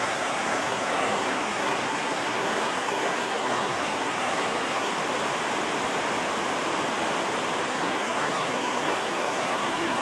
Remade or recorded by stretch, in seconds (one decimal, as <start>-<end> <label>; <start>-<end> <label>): 0.0-4.9 remade; 4.9-7.7 recorded; 7.7-10.0 remade